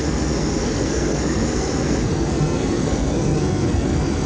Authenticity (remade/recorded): remade